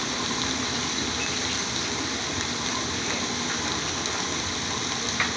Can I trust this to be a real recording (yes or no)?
yes